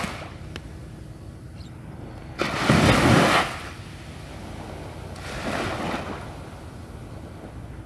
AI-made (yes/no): no